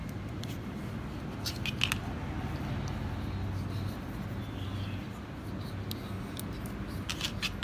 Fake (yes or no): no